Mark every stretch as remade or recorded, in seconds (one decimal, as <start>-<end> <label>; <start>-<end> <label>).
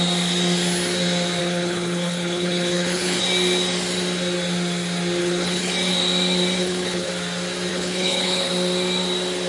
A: 0.0-1.4 recorded; 1.4-3.2 remade; 3.2-5.2 recorded; 5.2-5.7 remade; 5.7-6.6 recorded; 6.6-7.1 remade; 7.1-7.7 recorded; 7.7-8.5 remade; 8.5-9.5 recorded